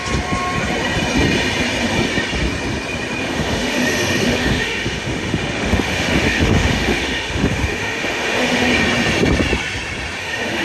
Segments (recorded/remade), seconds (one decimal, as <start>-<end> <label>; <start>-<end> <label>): 0.0-3.2 recorded; 3.2-8.7 remade; 8.7-10.2 recorded; 10.2-10.6 remade